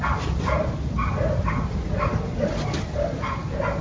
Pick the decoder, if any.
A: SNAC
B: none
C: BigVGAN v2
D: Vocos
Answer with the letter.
B